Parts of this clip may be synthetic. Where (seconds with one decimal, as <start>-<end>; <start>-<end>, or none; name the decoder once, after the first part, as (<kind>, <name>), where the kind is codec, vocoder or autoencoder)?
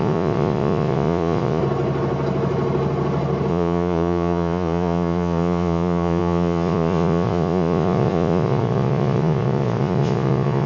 0.0-1.6 (vocoder, Vocos); 3.5-10.7